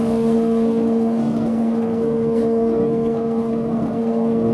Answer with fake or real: fake